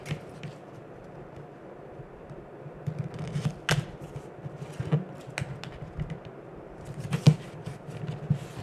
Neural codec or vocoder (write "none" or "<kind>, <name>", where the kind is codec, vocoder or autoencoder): none